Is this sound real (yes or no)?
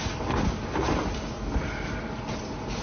yes